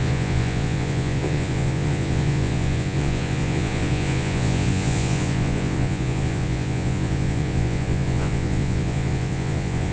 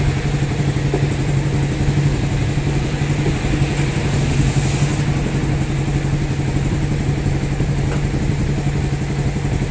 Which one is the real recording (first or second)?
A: second